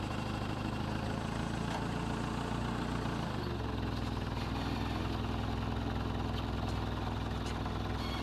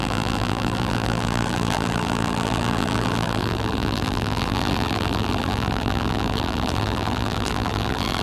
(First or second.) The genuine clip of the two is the first